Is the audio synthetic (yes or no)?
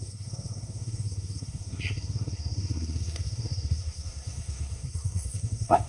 yes